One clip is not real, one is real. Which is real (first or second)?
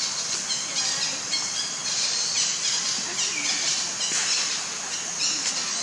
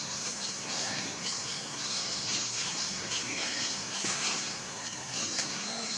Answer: first